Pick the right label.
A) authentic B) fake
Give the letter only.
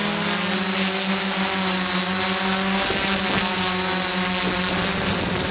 A